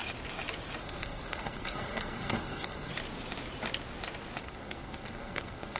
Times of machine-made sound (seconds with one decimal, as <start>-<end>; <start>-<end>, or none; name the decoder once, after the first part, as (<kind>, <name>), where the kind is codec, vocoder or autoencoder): 0.8-2.9 (codec, SNAC); 4.4-5.8